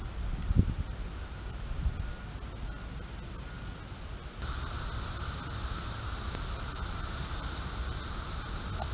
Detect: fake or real real